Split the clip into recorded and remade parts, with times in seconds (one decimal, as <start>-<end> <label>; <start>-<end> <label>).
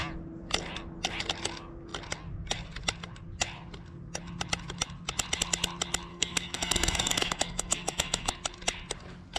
0.0-6.1 recorded; 6.1-8.3 remade; 8.3-9.4 recorded